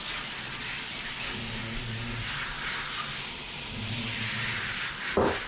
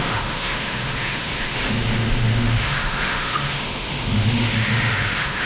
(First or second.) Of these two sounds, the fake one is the second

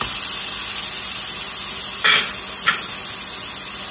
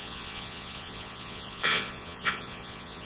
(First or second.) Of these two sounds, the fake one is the second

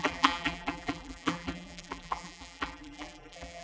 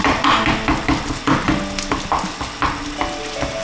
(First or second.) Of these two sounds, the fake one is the first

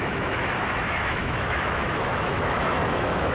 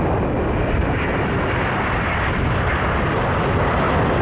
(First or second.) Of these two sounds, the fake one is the first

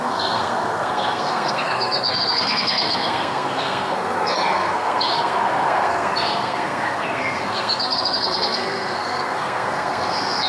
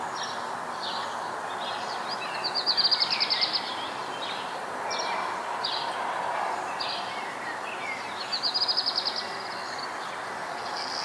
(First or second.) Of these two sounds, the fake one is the first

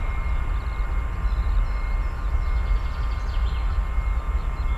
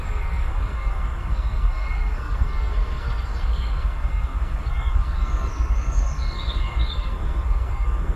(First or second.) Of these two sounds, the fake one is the second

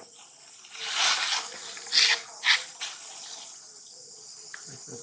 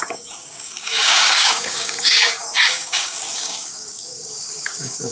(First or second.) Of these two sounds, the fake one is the second